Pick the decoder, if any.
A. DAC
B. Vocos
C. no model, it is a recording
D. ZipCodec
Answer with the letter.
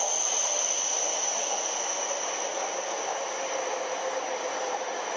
C